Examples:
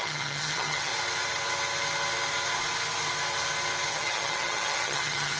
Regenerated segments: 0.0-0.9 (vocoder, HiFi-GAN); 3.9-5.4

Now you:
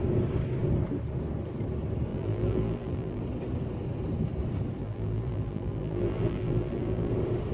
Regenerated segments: 2.1-3.2 (vocoder, BigVGAN v2); 4.8-7.1

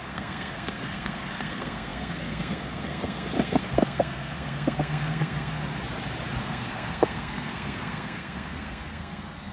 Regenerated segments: 0.0-5.6 (codec, SNAC); 6.4-9.5

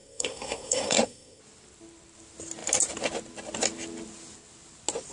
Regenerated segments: 0.0-1.4 (codec, SNAC)

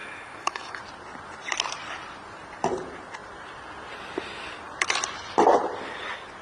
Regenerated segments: 0.0-0.8 (autoencoder, DAC-VAE)

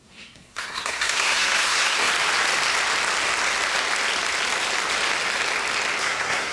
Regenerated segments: 0.0-2.1 (codec, SNAC); 6.0-6.5

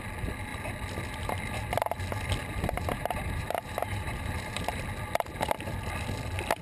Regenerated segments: 2.4-4.6 (vocoder, BigVGAN v2)